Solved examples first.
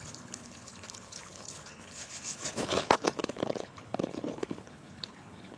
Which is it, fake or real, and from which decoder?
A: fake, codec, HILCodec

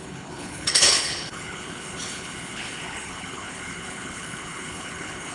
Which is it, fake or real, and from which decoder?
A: fake, codec, HILCodec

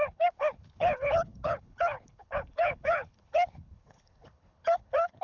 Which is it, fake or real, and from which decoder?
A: fake, codec, HILCodec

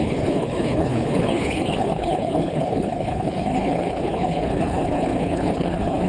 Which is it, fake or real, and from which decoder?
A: fake, codec, HILCodec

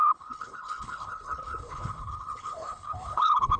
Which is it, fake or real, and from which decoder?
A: fake, codec, HILCodec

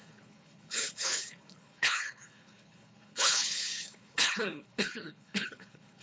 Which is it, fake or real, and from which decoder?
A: fake, codec, HILCodec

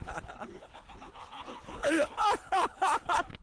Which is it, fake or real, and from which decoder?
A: fake, codec, HILCodec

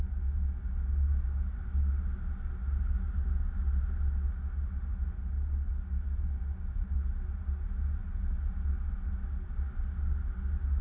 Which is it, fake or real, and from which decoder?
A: real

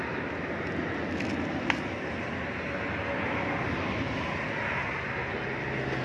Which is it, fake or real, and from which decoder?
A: real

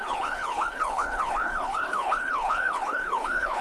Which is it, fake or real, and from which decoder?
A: fake, codec, HILCodec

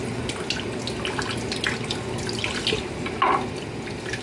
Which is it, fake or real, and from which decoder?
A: real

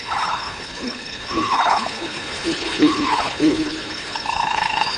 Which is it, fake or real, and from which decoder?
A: fake, codec, HILCodec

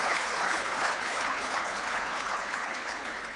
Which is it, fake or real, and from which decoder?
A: fake, codec, HILCodec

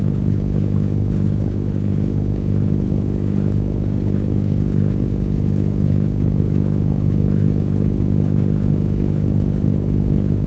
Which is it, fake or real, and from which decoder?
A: fake, codec, HILCodec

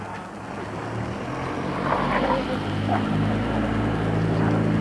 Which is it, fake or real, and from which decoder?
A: real